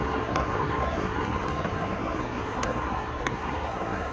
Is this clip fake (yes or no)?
yes